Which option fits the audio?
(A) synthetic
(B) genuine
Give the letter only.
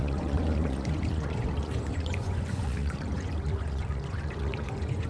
A